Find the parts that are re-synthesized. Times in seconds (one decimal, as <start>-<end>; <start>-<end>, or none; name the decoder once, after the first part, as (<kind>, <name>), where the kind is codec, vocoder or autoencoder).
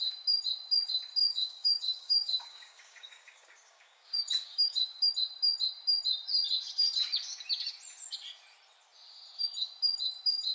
1.2-5.1 (codec, DAC)